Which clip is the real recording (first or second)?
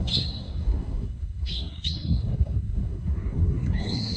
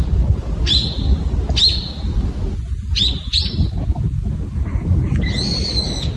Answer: second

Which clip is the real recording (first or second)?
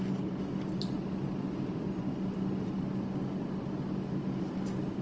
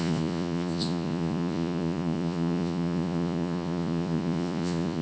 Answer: first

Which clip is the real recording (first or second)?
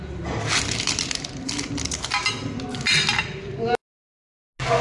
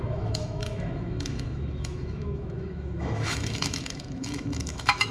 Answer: first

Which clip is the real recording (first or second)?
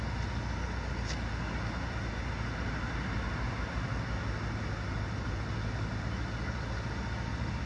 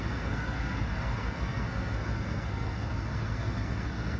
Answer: first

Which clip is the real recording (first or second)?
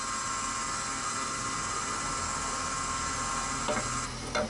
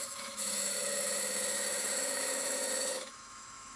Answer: first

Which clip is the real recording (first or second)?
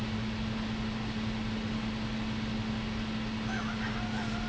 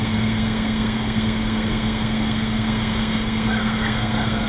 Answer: first